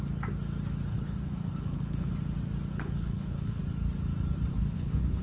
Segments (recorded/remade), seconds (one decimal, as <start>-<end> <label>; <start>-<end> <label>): 0.0-0.9 recorded; 0.9-2.1 remade; 2.1-2.7 recorded; 2.7-3.6 remade; 3.6-4.5 recorded; 4.5-5.2 remade